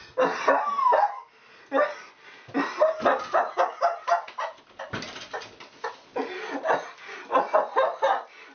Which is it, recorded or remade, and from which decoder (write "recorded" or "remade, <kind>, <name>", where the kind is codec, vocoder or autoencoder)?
recorded